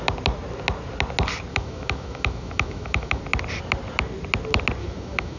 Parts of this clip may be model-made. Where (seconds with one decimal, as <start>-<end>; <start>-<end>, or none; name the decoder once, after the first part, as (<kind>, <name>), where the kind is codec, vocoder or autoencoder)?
1.5-3.2 (autoencoder, DAC-VAE); 4.8-5.4

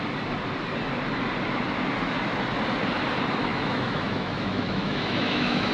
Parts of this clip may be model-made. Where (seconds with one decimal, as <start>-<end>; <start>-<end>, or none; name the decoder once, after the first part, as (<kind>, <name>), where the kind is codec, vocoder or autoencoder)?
3.5-5.7 (autoencoder, DAC-VAE)

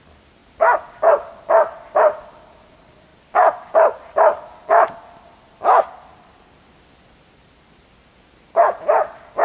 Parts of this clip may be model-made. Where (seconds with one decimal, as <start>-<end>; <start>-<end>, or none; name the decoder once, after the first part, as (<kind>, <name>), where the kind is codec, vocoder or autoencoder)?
none

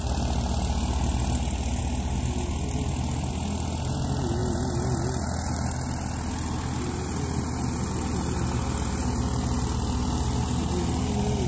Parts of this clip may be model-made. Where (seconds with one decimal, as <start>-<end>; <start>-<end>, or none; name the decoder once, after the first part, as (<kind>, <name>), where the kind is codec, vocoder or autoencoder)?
none

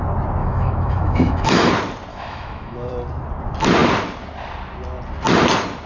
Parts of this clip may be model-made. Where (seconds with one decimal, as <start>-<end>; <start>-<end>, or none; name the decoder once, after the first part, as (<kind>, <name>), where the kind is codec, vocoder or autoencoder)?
0.4-1.7 (autoencoder, DAC-VAE); 2.1-2.9

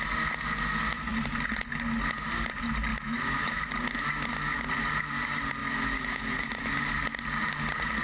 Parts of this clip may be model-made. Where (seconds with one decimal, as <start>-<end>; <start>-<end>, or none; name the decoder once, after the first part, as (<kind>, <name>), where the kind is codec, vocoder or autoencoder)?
2.9-3.7 (autoencoder, DAC-VAE); 5.6-6.7

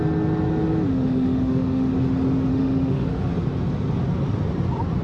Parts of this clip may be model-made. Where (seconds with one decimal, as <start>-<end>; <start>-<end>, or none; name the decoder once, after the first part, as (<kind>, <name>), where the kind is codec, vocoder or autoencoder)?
0.9-1.9 (autoencoder, DAC-VAE); 2.5-3.3

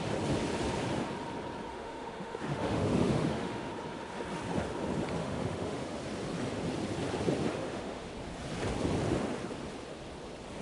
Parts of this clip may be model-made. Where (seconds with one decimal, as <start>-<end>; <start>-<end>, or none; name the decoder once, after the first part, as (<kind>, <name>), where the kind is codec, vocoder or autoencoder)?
1.7-3.7 (autoencoder, DAC-VAE); 5.2-6.0; 7.5-8.1